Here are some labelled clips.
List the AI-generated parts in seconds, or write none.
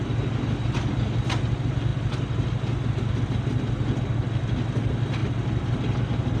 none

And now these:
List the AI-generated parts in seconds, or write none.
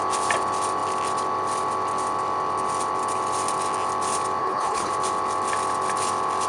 4.4-4.9 (codec, HILCodec)